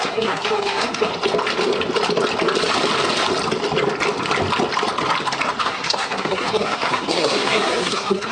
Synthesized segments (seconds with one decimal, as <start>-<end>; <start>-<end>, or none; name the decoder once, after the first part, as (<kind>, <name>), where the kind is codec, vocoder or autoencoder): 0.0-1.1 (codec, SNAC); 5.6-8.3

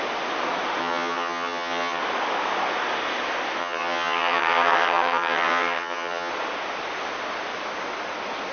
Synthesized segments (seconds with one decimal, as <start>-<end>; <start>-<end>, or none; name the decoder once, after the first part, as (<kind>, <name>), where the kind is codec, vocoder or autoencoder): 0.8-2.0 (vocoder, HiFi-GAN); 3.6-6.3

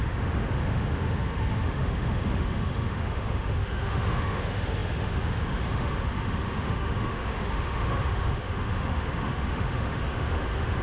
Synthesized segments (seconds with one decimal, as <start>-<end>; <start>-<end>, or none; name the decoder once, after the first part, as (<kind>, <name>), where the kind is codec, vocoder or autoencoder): 0.0-10.8 (autoencoder, DAC-VAE)

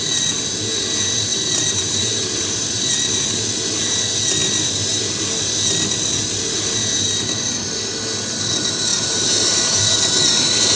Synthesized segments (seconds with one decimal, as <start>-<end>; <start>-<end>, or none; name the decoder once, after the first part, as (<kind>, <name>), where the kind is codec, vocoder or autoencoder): 1.3-2.8 (vocoder, BigVGAN v2); 8.9-9.8